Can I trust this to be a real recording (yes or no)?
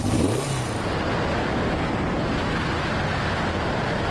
yes